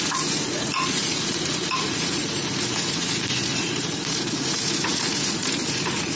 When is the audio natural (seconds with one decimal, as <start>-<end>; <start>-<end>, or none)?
none